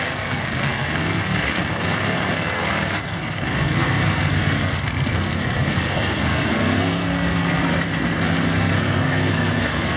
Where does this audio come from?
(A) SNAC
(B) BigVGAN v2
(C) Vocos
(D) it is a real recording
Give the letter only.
A